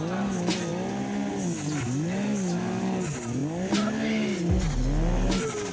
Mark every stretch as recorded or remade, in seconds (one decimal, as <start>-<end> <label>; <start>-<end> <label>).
0.0-5.7 recorded